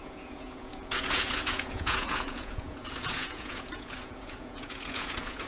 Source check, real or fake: fake